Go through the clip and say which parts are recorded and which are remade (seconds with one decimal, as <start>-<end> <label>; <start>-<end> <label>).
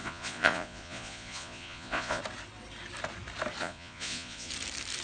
0.0-2.2 remade; 2.2-3.6 recorded; 3.6-4.5 remade; 4.5-5.0 recorded